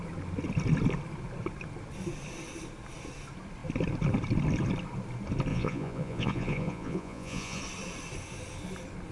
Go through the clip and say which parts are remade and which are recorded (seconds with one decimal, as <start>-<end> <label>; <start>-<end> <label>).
0.0-5.5 recorded; 5.5-7.6 remade; 7.6-9.1 recorded